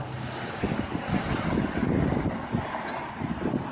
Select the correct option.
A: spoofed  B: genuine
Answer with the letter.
B